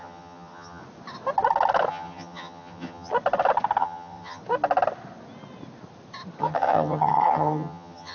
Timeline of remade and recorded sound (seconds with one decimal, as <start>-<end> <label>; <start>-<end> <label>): 0.0-0.8 remade; 0.8-1.9 recorded; 1.9-3.1 remade; 3.1-3.8 recorded; 3.8-4.4 remade; 4.4-6.4 recorded; 6.4-8.1 remade